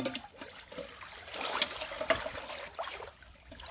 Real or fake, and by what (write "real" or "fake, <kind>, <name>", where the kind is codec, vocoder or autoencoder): real